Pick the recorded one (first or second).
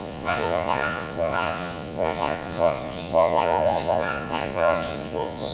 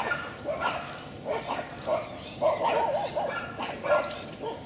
second